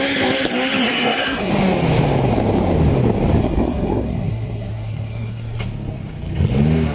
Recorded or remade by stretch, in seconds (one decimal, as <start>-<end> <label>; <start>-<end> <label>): 0.0-0.8 recorded; 0.8-1.5 remade; 1.5-3.4 recorded; 3.4-5.6 remade; 5.6-6.9 recorded